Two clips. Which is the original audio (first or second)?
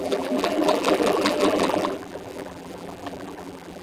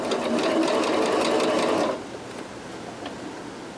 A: second